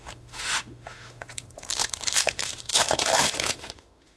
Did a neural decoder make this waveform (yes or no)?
yes